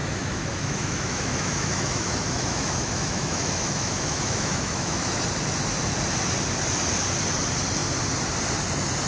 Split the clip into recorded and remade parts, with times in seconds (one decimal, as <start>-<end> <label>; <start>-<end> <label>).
0.0-5.2 remade; 5.2-9.1 recorded